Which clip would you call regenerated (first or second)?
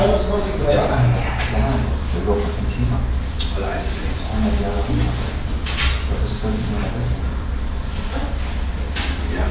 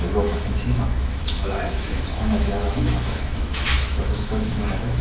second